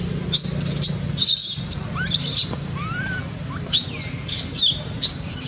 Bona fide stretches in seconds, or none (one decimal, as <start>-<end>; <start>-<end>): 0.0-5.5

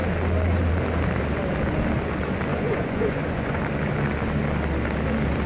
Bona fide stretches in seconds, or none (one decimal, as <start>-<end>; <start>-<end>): 0.0-2.5; 3.6-5.5

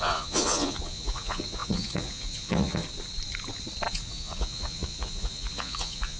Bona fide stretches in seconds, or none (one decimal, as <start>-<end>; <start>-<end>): 2.8-3.9

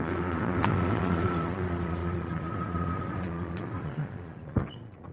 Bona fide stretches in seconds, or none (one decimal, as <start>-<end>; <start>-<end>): none